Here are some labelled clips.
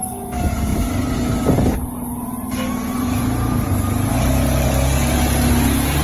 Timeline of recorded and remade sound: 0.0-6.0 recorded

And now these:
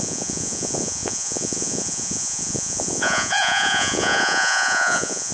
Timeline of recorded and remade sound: 0.0-5.3 remade

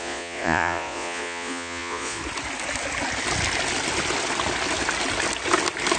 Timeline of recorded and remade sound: 0.0-2.2 remade; 2.2-6.0 recorded